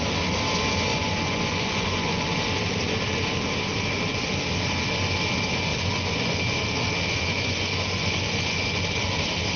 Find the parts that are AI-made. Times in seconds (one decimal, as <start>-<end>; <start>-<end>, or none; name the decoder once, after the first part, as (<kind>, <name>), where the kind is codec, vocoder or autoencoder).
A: 0.9-2.4 (vocoder, Vocos); 5.7-6.4; 7.3-9.1